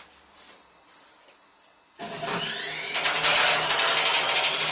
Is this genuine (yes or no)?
yes